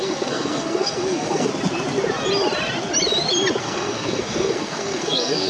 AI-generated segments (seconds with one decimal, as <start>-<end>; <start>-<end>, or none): 0.0-1.5; 3.6-5.5